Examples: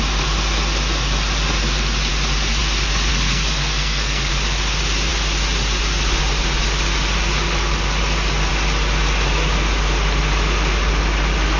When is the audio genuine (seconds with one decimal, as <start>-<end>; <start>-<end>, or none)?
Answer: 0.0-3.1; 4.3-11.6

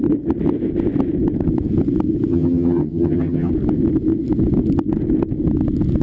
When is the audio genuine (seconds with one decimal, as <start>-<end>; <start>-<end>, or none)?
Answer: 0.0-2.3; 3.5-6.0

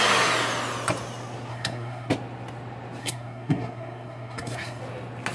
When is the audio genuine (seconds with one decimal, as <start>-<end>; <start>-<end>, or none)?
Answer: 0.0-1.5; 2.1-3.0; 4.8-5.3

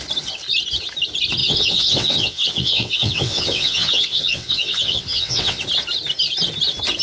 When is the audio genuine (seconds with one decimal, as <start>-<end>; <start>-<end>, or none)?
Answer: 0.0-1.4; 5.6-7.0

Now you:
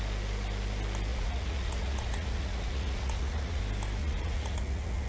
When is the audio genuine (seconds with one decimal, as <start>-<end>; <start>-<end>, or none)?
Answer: 0.0-1.1; 3.6-4.0

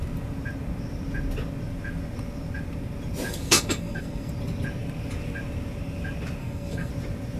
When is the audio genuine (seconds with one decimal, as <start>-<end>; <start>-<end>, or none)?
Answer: 0.0-3.3; 4.3-6.4; 6.9-7.4

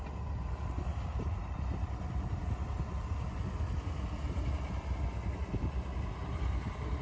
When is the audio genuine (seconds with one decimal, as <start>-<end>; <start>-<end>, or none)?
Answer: 0.0-0.9; 2.4-7.0